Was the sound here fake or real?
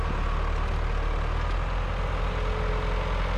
real